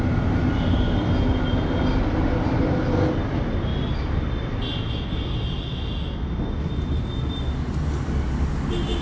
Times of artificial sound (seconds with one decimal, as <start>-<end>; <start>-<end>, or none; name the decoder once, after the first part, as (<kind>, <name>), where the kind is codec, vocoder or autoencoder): none